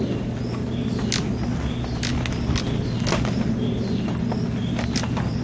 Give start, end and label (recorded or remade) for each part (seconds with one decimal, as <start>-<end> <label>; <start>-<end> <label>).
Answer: 0.0-5.4 recorded